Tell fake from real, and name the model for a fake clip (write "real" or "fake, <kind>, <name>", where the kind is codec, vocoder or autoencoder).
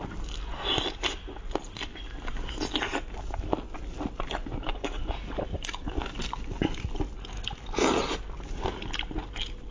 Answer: real